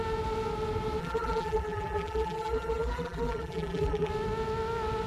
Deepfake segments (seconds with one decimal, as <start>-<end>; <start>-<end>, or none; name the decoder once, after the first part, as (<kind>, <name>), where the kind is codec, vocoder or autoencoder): 1.0-4.1 (vocoder, BigVGAN v2)

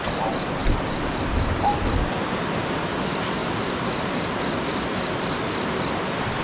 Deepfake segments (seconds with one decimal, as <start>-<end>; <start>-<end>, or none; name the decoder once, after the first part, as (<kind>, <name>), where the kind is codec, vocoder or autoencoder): none

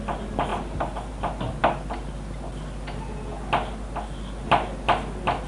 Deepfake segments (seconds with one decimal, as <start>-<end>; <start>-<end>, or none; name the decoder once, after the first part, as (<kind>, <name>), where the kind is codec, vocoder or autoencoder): none

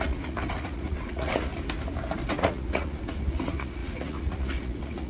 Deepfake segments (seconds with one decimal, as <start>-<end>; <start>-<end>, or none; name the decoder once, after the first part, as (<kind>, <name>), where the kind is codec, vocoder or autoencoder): 0.0-1.5 (vocoder, Vocos); 2.3-5.1

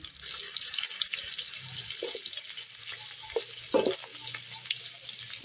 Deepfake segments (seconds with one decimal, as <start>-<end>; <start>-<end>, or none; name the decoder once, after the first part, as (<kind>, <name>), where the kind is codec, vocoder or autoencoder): none

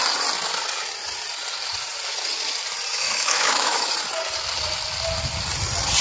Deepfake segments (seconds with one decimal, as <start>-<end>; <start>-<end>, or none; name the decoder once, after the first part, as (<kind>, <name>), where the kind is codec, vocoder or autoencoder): 2.9-3.9 (autoencoder, DAC-VAE)

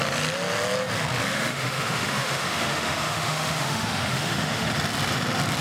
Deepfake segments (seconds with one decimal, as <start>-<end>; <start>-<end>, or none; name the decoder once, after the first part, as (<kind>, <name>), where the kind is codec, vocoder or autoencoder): 1.3-4.7 (autoencoder, DAC-VAE)

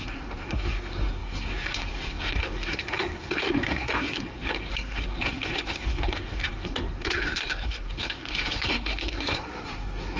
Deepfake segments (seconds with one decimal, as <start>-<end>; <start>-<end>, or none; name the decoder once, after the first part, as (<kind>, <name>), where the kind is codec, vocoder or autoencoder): 0.0-10.2 (codec, SNAC)